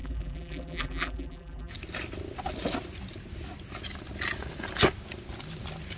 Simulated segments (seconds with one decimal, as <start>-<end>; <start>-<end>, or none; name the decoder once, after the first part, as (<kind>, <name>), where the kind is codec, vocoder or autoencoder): 0.0-1.7 (vocoder, BigVGAN v2)